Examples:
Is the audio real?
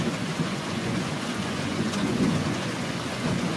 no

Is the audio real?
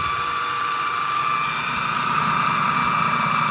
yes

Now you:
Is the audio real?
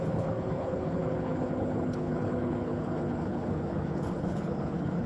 no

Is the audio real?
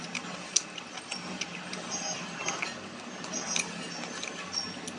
yes